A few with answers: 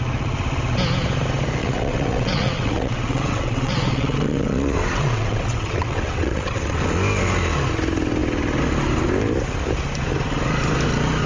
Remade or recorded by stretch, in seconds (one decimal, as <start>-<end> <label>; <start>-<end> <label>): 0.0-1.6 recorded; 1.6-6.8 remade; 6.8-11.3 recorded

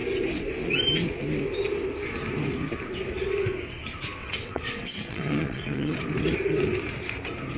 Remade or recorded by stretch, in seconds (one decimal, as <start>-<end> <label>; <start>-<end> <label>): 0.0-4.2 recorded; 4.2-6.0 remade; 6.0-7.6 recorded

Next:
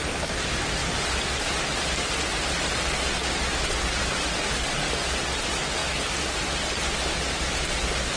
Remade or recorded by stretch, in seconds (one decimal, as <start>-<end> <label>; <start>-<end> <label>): 0.0-8.2 recorded

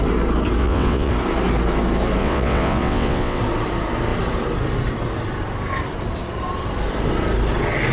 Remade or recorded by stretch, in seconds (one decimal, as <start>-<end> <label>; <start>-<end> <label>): 0.0-0.6 recorded; 0.6-1.1 remade; 1.1-2.2 recorded; 2.2-3.4 remade; 3.4-7.9 recorded